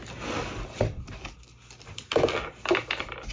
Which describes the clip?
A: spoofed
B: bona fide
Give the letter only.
B